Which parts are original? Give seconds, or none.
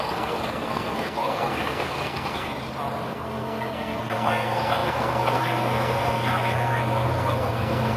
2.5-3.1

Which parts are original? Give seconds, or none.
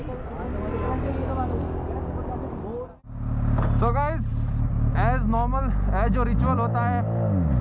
0.0-7.6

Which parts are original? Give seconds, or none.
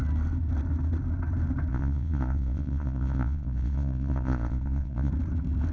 0.0-1.7; 5.1-5.7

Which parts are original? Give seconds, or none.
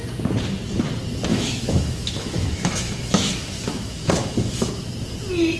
0.0-1.3; 4.7-5.6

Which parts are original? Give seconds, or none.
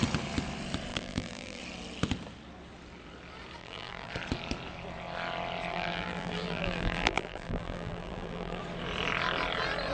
0.0-0.9; 1.6-3.6; 4.1-5.7; 8.6-9.9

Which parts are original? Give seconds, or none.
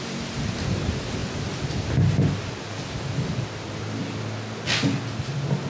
0.0-5.7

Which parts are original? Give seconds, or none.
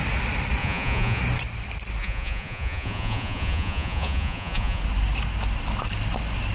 0.0-0.6; 1.2-2.0; 4.8-6.5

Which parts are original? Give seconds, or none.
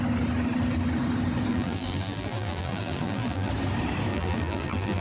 0.0-1.5; 3.5-4.1